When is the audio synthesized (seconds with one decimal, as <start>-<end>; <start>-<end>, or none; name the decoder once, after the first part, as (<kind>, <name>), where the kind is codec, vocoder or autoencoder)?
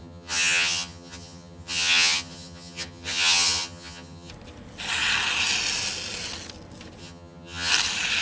0.0-4.3 (vocoder, HiFi-GAN); 7.0-7.7